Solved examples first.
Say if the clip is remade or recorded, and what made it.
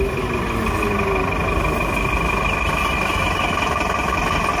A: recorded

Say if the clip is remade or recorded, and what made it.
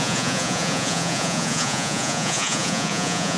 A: remade, vocoder, Vocos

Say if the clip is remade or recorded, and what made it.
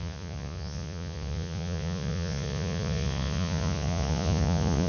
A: remade, vocoder, Vocos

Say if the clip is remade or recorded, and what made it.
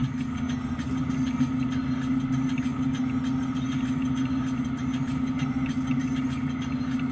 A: recorded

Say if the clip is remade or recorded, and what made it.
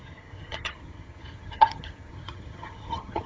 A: remade, vocoder, HiFi-GAN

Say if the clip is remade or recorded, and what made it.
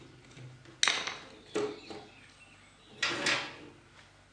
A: recorded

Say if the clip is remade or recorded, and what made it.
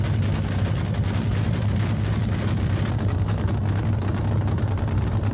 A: recorded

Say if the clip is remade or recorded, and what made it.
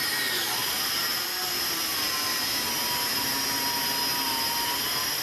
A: recorded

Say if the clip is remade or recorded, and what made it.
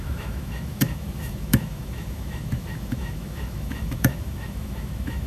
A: remade, autoencoder, DAC-VAE